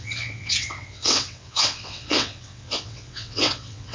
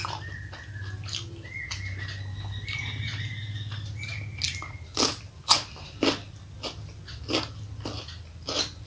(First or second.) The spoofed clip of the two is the first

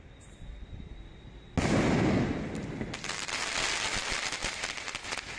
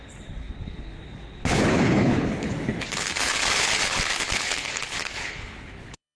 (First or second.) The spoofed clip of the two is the second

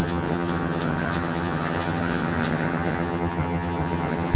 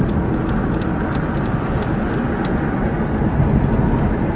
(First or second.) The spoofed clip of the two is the first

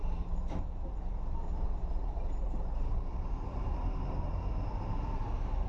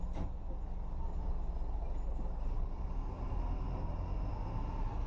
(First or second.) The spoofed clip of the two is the first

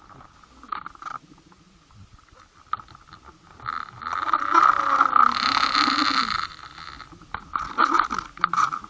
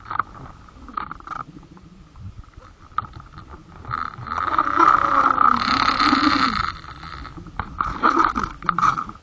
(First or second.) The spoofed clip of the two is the second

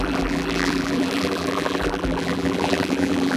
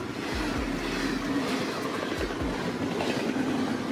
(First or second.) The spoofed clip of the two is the first